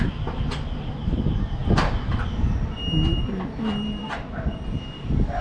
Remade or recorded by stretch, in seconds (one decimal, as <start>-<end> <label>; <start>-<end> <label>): 0.0-5.4 recorded